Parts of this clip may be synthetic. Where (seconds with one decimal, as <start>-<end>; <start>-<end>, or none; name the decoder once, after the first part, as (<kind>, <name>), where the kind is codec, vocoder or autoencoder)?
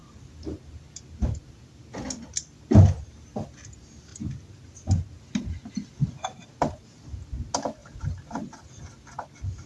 0.0-0.6 (vocoder, BigVGAN v2); 7.8-8.4